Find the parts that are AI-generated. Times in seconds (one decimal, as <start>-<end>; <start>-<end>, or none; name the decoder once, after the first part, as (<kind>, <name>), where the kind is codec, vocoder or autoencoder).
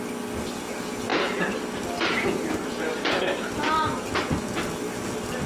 1.1-3.6 (vocoder, BigVGAN v2)